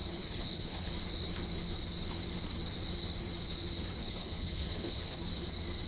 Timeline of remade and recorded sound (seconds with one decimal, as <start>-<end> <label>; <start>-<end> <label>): 0.0-0.9 remade; 0.9-4.0 recorded; 4.0-5.2 remade; 5.2-5.9 recorded